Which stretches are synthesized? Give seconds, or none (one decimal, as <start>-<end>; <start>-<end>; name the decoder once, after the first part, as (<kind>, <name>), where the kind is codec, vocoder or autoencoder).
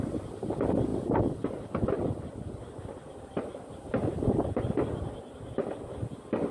none